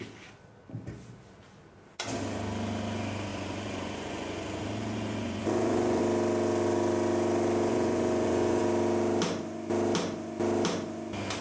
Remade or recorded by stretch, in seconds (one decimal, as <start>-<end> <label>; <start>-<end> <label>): 0.0-3.3 recorded; 3.3-6.0 remade; 6.0-7.7 recorded; 7.7-8.6 remade; 8.6-11.4 recorded